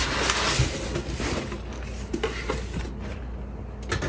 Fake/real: real